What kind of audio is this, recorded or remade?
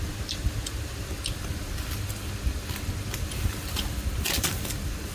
recorded